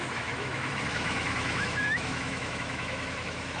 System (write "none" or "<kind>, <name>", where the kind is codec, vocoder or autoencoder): autoencoder, DAC-VAE